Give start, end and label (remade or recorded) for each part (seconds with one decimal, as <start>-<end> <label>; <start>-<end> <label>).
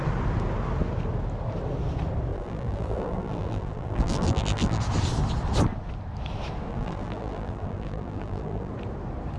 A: 0.0-2.3 recorded; 2.3-4.8 remade; 4.8-6.7 recorded; 6.7-8.7 remade; 8.7-9.4 recorded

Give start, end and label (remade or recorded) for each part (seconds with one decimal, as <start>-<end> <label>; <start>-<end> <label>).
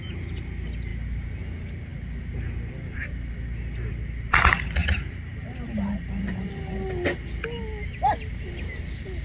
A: 0.0-4.8 recorded; 4.8-6.5 remade; 6.5-9.2 recorded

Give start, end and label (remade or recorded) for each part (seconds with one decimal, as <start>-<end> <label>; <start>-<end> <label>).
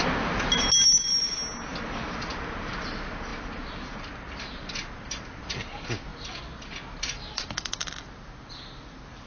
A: 0.0-1.7 recorded; 1.7-2.3 remade; 2.3-3.3 recorded; 3.3-4.6 remade; 4.6-6.1 recorded; 6.1-8.0 remade; 8.0-9.3 recorded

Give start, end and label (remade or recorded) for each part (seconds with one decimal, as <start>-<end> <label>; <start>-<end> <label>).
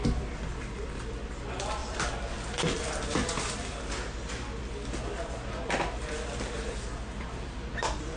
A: 0.0-1.8 recorded; 1.8-3.6 remade; 3.6-8.2 recorded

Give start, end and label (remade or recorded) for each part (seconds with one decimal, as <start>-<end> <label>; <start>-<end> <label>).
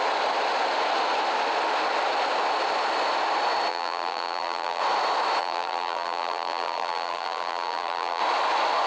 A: 0.0-3.7 recorded; 3.7-4.8 remade; 4.8-5.4 recorded; 5.4-8.2 remade; 8.2-8.9 recorded